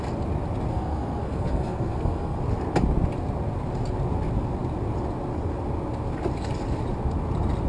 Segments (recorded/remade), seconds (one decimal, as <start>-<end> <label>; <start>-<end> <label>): 0.0-0.7 recorded; 0.7-2.4 remade; 2.4-7.7 recorded